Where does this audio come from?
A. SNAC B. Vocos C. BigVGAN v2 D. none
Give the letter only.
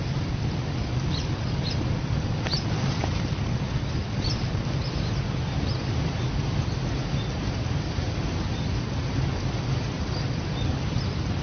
D